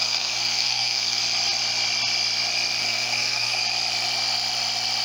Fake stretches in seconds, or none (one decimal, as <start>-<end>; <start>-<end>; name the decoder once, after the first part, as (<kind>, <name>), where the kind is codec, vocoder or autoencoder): 0.0-1.2 (codec, SNAC); 2.8-3.6